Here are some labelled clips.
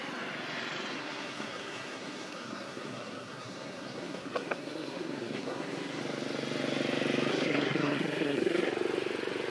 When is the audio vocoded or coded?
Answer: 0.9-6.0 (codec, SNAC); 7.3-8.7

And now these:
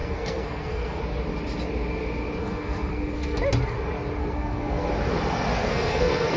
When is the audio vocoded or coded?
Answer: 0.0-1.0 (codec, SNAC); 2.4-3.4; 4.2-4.9; 5.6-6.4

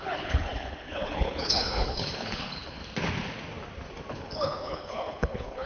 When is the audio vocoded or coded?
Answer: 0.0-2.8 (codec, HILCodec); 4.1-5.7